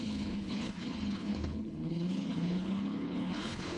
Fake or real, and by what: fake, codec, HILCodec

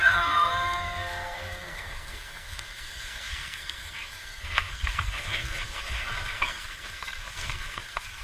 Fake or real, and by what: fake, codec, SNAC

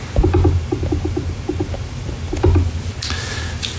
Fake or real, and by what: real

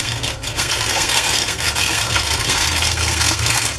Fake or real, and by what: fake, codec, SNAC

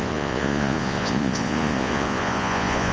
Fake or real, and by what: fake, vocoder, Vocos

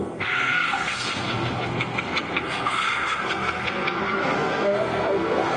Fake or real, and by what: fake, codec, SNAC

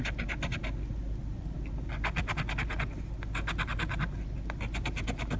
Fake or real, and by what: real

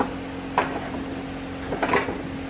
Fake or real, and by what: real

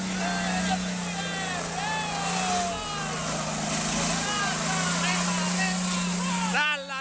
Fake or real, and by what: real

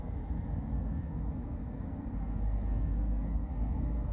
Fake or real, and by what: fake, codec, SNAC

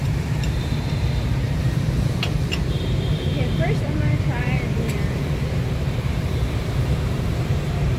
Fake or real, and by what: fake, vocoder, BigVGAN v2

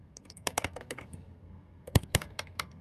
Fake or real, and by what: fake, codec, SNAC